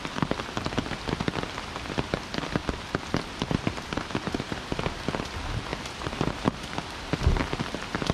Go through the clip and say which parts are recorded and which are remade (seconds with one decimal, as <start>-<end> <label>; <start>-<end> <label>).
0.0-2.6 recorded; 2.6-4.4 remade; 4.4-5.7 recorded; 5.7-6.3 remade; 6.3-8.1 recorded